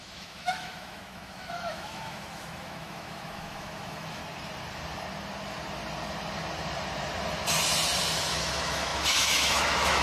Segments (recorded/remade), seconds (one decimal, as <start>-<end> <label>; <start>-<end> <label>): 0.0-4.2 remade; 4.2-8.2 recorded; 8.2-10.0 remade